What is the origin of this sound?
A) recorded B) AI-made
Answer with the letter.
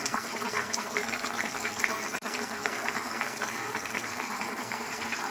B